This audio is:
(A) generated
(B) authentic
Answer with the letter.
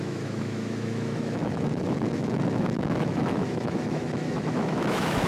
A